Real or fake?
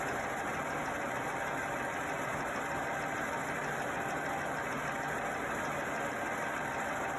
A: real